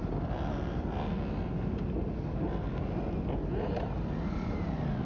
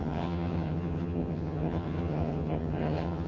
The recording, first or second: first